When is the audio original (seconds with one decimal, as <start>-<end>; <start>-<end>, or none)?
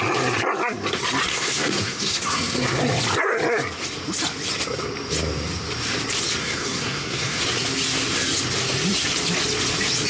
0.0-1.3; 2.8-6.4; 7.4-10.1